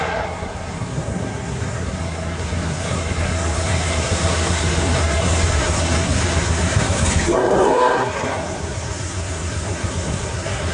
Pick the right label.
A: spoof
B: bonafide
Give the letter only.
A